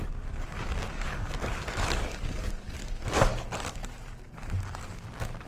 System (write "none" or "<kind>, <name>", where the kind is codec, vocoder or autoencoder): codec, DAC